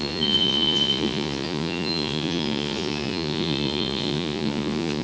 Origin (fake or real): fake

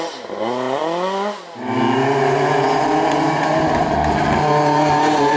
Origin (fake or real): real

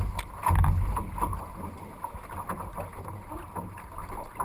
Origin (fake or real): real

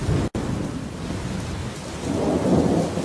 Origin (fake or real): real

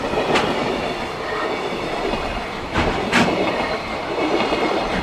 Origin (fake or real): real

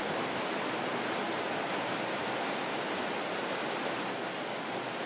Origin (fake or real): real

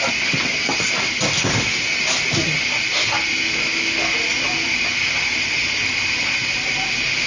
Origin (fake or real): real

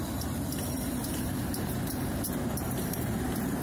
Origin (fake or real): fake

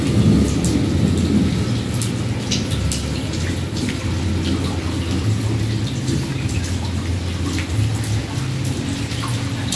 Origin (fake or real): real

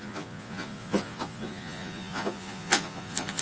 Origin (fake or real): fake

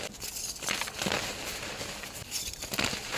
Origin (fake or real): real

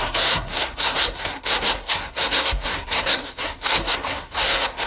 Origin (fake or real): fake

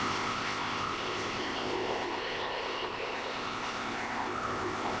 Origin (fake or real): fake